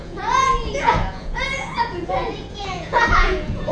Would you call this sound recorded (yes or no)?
no